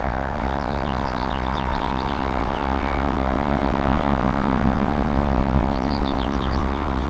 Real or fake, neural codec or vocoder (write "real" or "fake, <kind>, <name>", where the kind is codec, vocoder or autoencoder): fake, vocoder, WaveNeXt